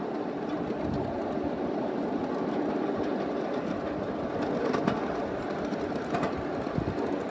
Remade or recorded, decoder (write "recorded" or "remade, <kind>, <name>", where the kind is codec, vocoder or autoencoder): recorded